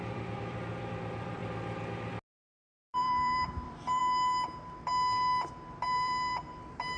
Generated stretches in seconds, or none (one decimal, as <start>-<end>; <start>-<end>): 0.0-1.4; 3.0-4.0; 5.5-7.0